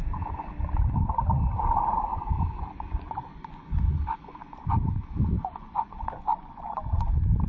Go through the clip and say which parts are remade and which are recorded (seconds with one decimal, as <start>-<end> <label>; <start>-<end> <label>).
0.0-0.5 remade; 0.5-2.1 recorded; 2.1-6.6 remade; 6.6-7.5 recorded